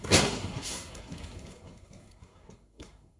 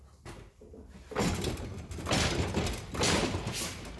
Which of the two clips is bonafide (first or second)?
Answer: second